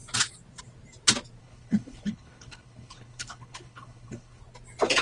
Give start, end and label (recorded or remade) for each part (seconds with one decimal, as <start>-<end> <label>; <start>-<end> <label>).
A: 0.0-1.4 recorded; 1.4-4.4 remade; 4.4-5.0 recorded